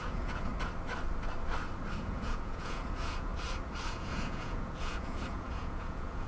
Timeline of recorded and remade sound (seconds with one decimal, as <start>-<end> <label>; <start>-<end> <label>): 0.0-0.5 remade; 0.5-2.0 recorded; 2.0-3.3 remade; 3.3-3.9 recorded; 3.9-6.3 remade